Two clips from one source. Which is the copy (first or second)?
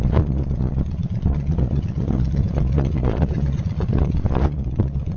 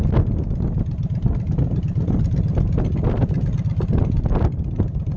first